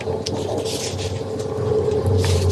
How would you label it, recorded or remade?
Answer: recorded